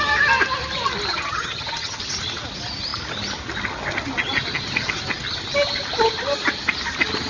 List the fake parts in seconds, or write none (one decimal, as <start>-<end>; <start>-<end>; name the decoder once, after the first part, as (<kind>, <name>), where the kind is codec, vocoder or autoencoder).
1.1-2.0 (vocoder, HiFi-GAN)